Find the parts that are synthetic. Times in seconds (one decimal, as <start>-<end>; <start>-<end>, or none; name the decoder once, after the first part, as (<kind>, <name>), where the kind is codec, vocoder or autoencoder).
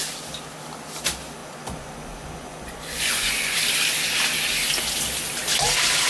1.4-3.6 (vocoder, Vocos)